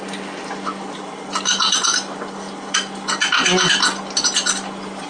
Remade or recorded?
recorded